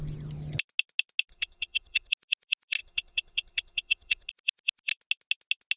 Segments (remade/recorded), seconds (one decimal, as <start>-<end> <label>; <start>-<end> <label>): 0.0-1.3 recorded; 1.3-2.1 remade; 2.1-2.8 recorded; 2.8-4.3 remade; 4.3-5.8 recorded

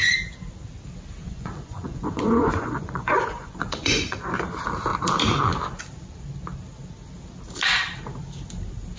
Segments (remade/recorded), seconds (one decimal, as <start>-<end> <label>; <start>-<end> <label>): 0.0-1.2 recorded; 1.2-4.2 remade; 4.2-9.0 recorded

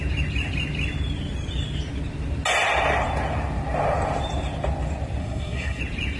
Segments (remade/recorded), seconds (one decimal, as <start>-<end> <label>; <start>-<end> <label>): 0.0-5.2 recorded; 5.2-5.8 remade; 5.8-6.2 recorded

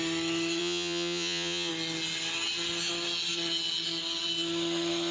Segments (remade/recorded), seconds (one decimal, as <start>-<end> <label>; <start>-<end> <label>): 0.0-0.6 recorded; 0.6-1.7 remade; 1.7-5.1 recorded

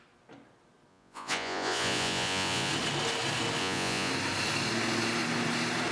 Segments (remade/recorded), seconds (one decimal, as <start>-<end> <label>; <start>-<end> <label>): 0.0-0.9 recorded; 0.9-2.7 remade; 2.7-3.6 recorded; 3.6-4.1 remade; 4.1-5.9 recorded

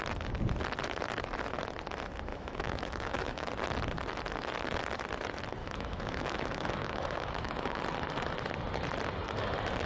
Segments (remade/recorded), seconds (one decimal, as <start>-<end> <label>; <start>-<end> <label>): 0.0-2.3 recorded; 2.3-3.5 remade; 3.5-5.6 recorded; 5.6-7.8 remade; 7.8-9.9 recorded